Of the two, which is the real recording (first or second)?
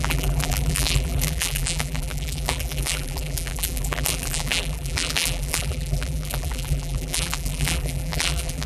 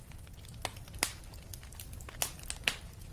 second